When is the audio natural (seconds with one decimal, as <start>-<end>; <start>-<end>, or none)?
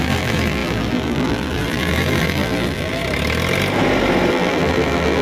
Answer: 3.0-4.3